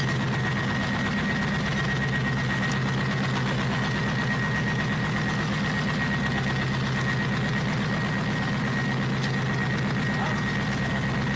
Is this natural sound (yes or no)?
yes